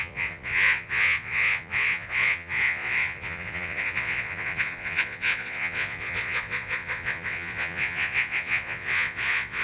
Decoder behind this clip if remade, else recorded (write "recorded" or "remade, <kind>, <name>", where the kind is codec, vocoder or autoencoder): remade, vocoder, Vocos